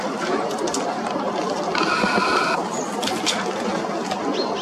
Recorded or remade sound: recorded